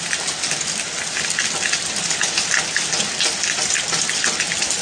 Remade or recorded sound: recorded